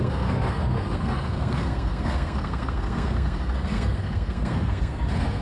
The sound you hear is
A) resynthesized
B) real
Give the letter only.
A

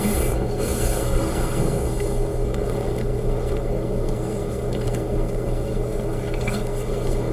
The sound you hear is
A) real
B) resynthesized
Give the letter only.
B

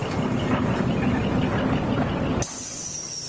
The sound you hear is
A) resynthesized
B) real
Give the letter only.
B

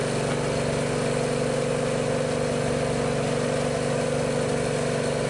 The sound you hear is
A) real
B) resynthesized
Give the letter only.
A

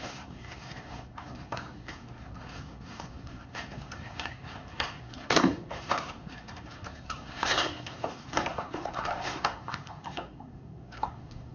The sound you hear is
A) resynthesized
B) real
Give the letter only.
A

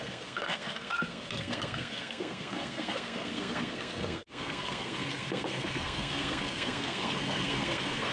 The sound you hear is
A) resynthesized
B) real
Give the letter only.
A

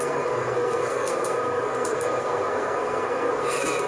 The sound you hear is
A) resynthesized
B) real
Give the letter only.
A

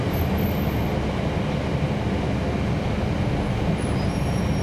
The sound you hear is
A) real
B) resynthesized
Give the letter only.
A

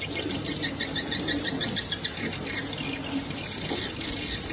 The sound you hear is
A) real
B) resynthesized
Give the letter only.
A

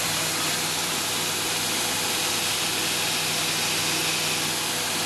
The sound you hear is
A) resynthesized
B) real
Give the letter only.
B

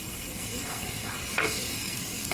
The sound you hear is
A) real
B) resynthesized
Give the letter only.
B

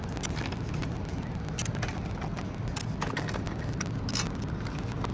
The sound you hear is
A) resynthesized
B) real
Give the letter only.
B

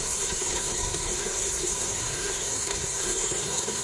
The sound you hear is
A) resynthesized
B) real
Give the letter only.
A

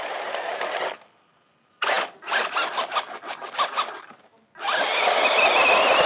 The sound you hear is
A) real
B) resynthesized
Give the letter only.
A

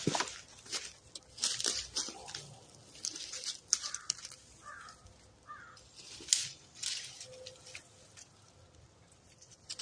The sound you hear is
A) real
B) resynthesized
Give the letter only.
A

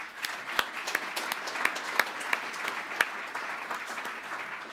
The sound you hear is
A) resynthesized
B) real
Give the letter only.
B